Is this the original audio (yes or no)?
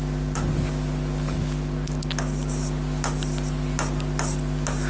yes